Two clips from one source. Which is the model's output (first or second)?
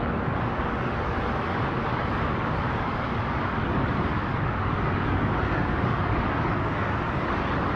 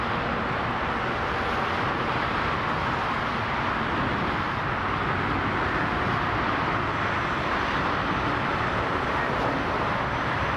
first